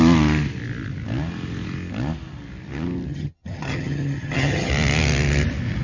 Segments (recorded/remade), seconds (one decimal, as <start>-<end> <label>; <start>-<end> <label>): 0.0-3.1 recorded; 3.1-4.7 remade; 4.7-5.8 recorded